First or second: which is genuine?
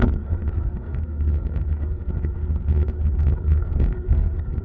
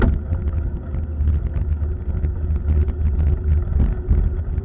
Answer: second